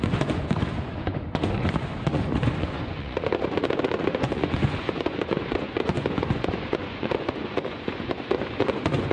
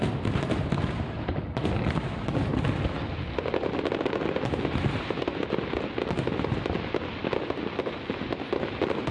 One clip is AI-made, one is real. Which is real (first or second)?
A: second